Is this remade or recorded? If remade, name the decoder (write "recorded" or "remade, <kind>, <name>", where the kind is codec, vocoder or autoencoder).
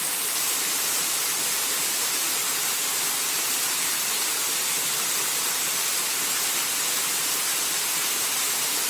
recorded